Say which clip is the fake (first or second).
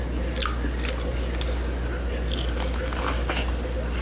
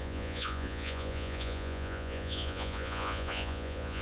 second